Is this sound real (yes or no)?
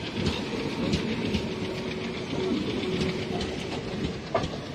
yes